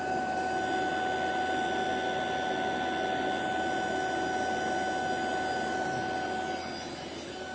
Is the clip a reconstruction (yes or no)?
no